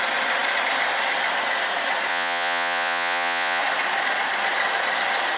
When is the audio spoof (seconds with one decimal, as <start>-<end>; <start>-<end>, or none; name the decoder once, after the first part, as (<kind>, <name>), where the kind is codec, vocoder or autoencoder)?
2.1-3.6 (vocoder, Vocos)